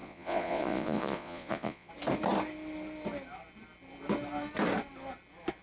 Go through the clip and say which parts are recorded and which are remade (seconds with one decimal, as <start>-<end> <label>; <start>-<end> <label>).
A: 0.0-1.9 remade; 1.9-5.6 recorded